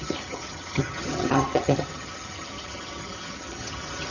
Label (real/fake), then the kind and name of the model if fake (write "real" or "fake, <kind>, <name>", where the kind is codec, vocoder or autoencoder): fake, vocoder, HiFi-GAN